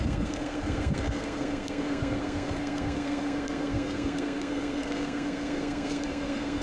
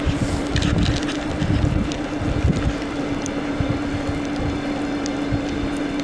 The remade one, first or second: first